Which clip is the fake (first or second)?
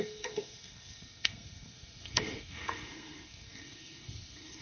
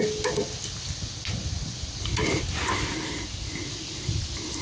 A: first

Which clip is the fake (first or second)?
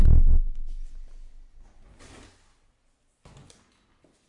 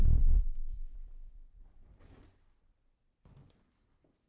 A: second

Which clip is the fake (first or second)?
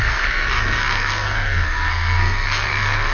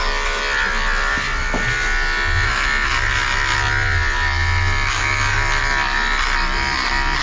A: first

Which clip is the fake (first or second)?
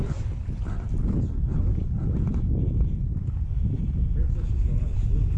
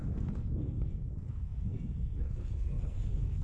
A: second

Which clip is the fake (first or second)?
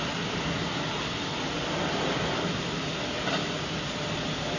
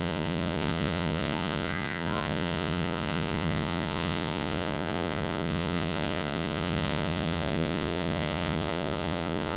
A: second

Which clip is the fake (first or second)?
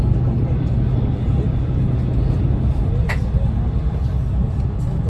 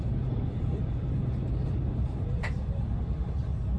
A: second